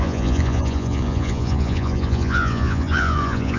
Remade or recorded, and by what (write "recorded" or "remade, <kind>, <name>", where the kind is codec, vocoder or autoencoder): remade, vocoder, Vocos